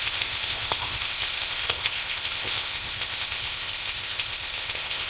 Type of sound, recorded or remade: remade